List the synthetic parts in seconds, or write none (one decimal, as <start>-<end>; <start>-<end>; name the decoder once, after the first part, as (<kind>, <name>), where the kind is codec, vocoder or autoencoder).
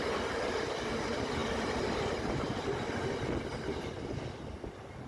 none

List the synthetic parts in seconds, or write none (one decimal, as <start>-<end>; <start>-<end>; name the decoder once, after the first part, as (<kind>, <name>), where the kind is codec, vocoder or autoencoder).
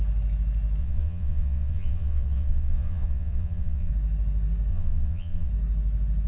0.8-3.9 (vocoder, Vocos); 4.7-5.5